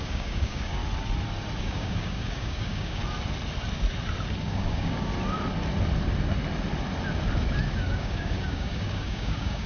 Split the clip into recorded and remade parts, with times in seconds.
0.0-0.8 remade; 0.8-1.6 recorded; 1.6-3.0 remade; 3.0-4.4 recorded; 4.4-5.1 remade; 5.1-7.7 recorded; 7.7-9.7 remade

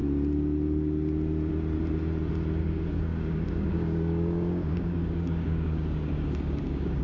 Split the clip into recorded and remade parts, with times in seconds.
0.0-2.6 recorded; 2.6-7.0 remade

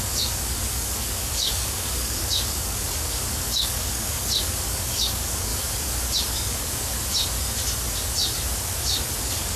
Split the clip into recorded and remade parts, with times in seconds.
0.0-5.5 remade; 5.5-6.2 recorded; 6.2-6.9 remade; 6.9-9.2 recorded; 9.2-9.6 remade

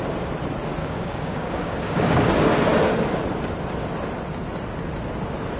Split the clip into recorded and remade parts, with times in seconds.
0.0-0.8 recorded; 0.8-2.3 remade; 2.3-5.6 recorded

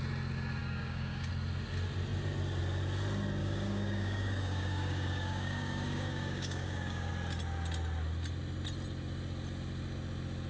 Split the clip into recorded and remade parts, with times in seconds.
0.0-0.6 recorded; 0.6-1.3 remade; 1.3-3.4 recorded; 3.4-7.1 remade; 7.1-10.5 recorded